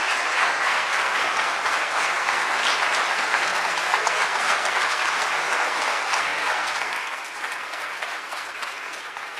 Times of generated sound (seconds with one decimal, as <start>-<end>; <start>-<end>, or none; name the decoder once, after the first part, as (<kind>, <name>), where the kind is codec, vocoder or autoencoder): 0.0-2.6 (codec, SNAC); 3.1-9.4